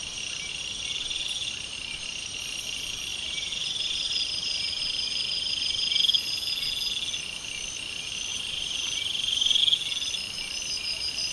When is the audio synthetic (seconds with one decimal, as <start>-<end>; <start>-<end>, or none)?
0.9-2.4; 3.1-5.5; 8.3-9.6